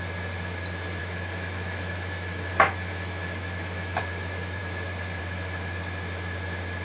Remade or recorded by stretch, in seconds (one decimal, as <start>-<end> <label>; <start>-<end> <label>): 0.0-1.0 recorded; 1.0-4.0 remade; 4.0-6.8 recorded